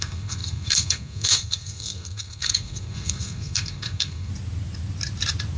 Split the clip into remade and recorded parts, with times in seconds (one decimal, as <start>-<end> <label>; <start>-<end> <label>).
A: 0.0-4.3 remade; 4.3-5.6 recorded